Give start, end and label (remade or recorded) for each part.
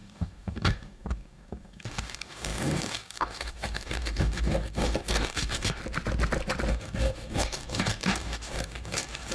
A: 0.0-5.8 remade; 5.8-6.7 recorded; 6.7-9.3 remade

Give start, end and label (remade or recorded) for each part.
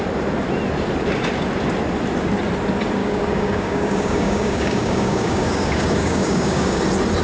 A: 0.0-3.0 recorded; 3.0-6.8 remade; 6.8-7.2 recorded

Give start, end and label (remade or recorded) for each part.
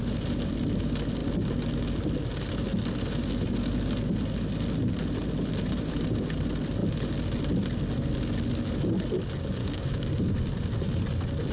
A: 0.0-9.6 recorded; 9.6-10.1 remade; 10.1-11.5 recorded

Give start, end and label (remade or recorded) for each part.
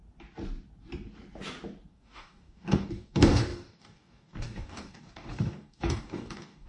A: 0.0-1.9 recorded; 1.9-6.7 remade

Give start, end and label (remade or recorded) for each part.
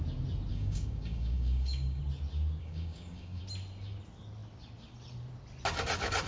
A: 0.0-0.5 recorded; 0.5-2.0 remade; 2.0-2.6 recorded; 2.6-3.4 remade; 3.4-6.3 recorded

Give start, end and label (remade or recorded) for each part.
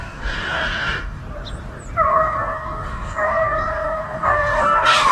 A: 0.0-1.2 remade; 1.2-2.1 recorded; 2.1-5.1 remade